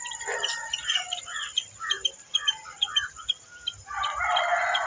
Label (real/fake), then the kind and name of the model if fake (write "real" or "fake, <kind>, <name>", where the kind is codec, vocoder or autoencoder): fake, vocoder, BigVGAN v2